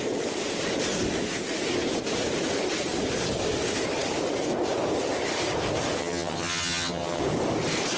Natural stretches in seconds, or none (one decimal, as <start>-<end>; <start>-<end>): 0.0-6.0; 7.2-8.0